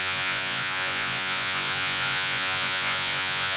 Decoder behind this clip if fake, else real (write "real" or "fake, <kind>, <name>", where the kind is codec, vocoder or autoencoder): fake, vocoder, Vocos